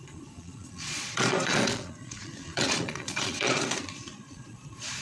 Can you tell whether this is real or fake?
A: fake